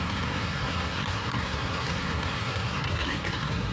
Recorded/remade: remade